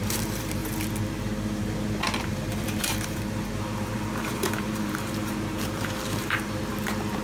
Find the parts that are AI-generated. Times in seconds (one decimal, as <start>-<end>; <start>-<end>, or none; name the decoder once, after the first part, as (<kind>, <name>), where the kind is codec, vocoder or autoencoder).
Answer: 0.0-0.6 (vocoder, BigVGAN v2); 2.2-7.2